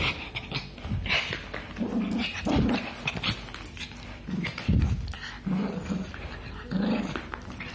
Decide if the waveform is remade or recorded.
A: recorded